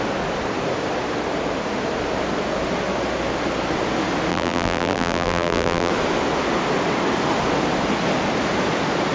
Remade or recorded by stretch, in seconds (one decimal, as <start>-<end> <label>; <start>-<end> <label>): 0.0-4.3 recorded; 4.3-5.9 remade; 5.9-9.1 recorded